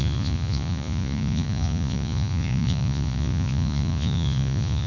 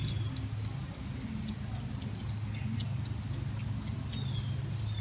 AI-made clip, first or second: first